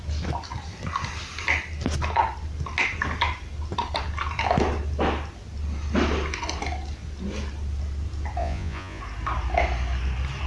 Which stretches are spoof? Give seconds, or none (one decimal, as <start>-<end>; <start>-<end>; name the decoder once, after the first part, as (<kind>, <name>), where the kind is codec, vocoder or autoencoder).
8.4-9.0 (vocoder, Vocos)